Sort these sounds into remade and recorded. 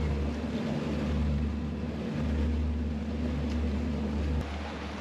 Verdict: recorded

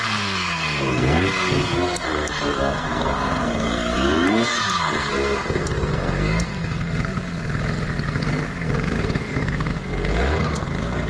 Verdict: remade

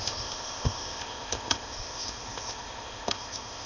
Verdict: remade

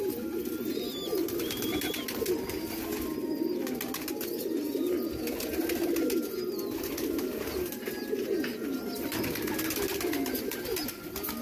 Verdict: recorded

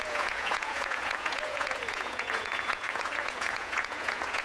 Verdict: remade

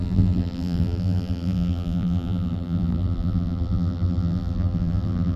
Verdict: remade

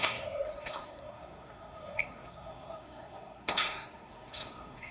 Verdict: remade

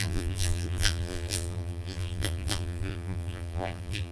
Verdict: remade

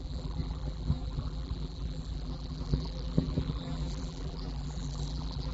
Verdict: remade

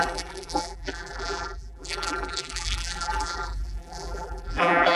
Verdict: remade